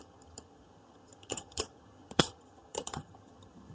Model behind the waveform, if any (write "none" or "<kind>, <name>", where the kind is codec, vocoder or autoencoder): vocoder, HiFi-GAN